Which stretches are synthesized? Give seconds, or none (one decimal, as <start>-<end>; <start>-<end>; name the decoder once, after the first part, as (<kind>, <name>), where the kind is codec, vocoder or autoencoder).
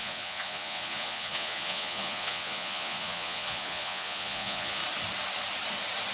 0.0-4.8 (vocoder, Vocos)